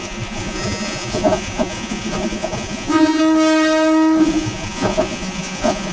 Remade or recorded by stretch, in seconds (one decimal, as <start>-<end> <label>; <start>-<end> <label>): 0.0-3.2 remade; 3.2-4.2 recorded; 4.2-5.9 remade